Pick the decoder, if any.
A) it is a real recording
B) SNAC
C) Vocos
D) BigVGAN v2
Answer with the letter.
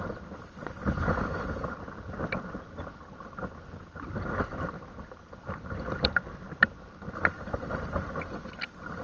A